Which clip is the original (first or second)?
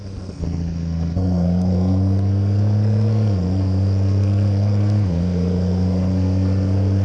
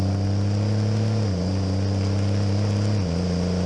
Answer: second